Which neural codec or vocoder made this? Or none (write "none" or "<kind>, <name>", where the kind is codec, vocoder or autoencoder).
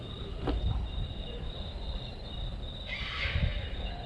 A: none